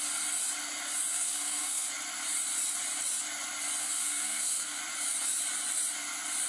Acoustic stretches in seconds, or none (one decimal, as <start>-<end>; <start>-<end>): 0.0-1.1; 1.9-3.8; 4.8-6.5